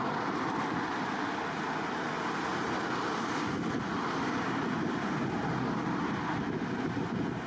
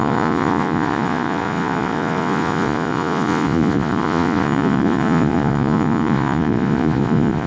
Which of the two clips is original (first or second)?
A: first